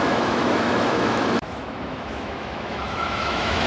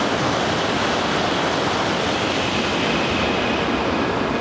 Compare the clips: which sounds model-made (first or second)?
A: first